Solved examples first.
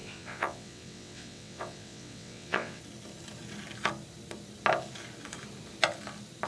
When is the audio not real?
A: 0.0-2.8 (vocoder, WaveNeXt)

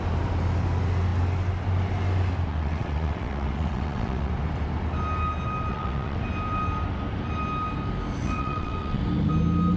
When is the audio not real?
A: 2.5-4.3 (vocoder, WaveNeXt); 5.7-6.2; 8.2-9.0

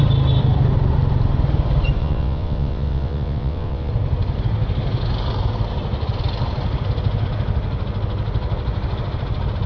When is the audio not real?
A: 2.0-3.9 (vocoder, WaveNeXt)

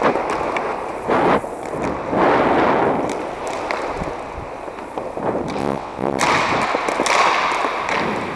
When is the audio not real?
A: 5.6-6.2 (vocoder, WaveNeXt)